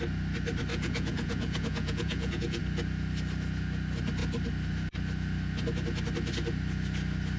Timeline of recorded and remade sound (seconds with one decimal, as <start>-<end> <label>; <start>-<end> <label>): 0.0-0.7 recorded; 0.7-2.6 remade; 2.6-7.4 recorded